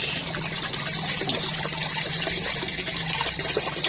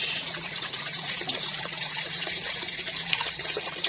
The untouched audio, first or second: first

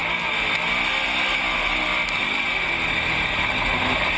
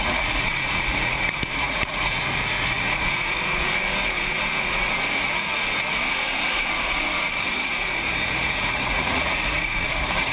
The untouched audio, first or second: first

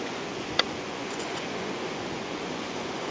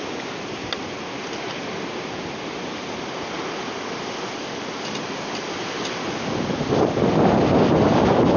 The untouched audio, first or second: second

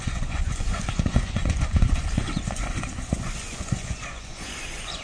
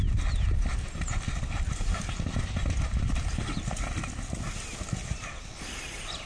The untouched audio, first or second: second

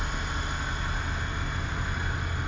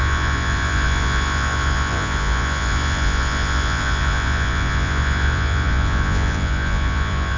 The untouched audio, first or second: first